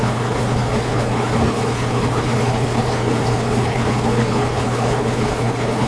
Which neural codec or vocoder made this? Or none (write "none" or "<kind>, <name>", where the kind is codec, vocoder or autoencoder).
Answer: codec, HILCodec